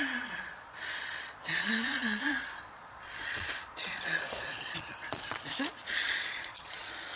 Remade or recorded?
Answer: remade